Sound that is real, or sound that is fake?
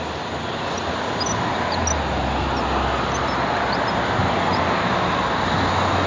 real